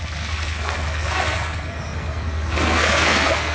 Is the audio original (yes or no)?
no